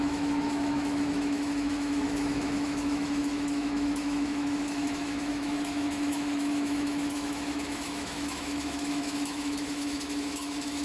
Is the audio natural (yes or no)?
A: no